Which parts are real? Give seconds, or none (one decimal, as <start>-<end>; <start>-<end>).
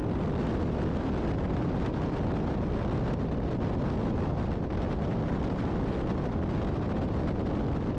0.0-8.0